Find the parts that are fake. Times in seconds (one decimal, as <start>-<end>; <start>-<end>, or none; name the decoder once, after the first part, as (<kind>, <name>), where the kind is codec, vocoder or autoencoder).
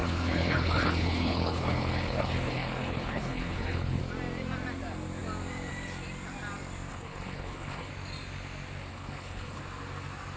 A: 0.0-4.0 (codec, HILCodec); 6.9-7.9; 8.9-9.6